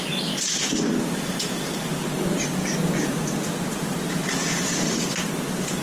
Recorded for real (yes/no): yes